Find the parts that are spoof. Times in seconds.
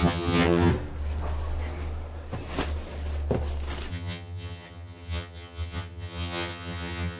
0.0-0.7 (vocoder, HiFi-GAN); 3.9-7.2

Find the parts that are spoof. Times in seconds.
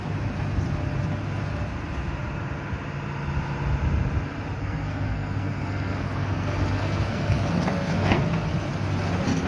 4.6-8.5 (codec, SNAC)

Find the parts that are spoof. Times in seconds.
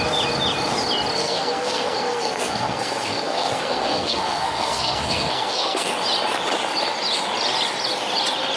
1.2-5.9 (codec, SNAC)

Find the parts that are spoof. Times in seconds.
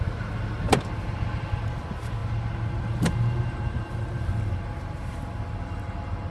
none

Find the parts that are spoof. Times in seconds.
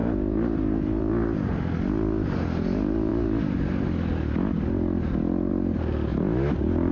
none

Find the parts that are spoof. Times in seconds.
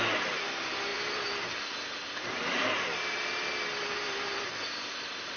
0.0-2.6 (vocoder, BigVGAN v2); 3.9-5.4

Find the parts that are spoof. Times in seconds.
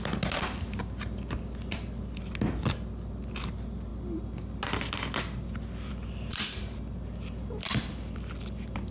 none